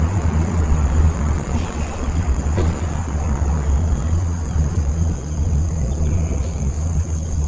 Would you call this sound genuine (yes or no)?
no